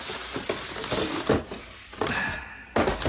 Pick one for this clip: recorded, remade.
recorded